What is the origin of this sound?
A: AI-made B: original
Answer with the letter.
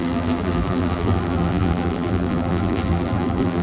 A